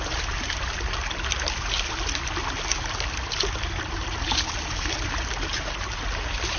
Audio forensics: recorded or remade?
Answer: recorded